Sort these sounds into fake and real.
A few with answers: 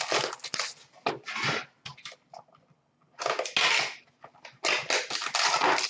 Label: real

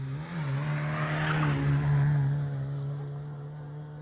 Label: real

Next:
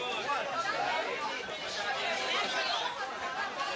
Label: real